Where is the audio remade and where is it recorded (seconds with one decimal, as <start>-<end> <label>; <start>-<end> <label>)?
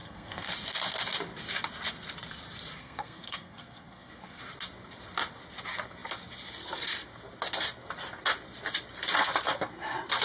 0.0-0.5 remade; 0.5-2.8 recorded; 2.8-4.4 remade; 4.4-10.2 recorded